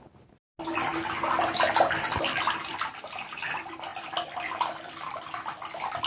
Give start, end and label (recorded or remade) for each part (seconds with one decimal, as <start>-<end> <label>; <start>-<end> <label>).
0.0-6.1 recorded